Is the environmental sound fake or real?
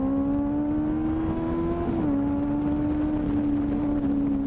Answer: real